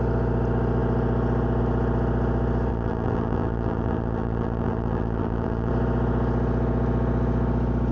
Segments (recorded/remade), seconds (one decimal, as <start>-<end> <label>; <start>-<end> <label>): 0.0-2.7 recorded; 2.7-5.7 remade; 5.7-7.9 recorded